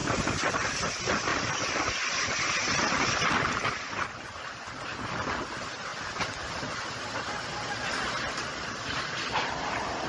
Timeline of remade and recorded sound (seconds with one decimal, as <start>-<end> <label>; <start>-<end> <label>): 0.0-0.7 remade; 0.7-1.3 recorded; 1.3-2.3 remade; 2.3-10.1 recorded